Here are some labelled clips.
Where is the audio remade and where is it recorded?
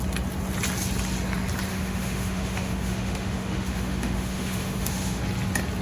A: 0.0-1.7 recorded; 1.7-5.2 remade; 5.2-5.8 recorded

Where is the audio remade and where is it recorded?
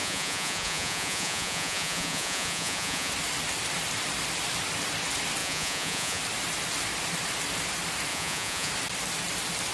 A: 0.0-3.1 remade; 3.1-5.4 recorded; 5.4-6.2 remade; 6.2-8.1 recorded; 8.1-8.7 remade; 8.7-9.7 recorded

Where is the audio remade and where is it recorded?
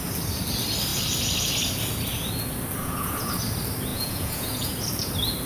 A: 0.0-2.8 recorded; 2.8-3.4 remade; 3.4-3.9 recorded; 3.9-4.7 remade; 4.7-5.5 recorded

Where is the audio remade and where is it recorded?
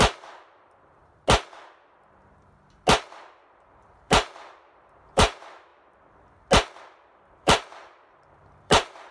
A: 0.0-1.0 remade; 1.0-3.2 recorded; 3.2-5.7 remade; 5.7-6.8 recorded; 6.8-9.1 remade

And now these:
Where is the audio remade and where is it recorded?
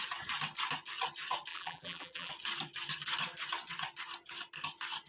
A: 0.0-1.5 recorded; 1.5-2.3 remade; 2.3-5.1 recorded